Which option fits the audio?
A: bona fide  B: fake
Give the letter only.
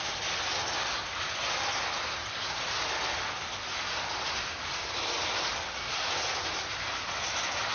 A